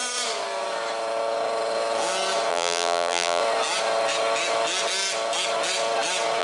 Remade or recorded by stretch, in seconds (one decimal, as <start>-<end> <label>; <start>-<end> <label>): 0.0-2.5 recorded; 2.5-3.4 remade; 3.4-6.4 recorded